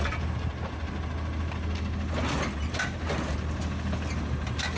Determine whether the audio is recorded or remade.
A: recorded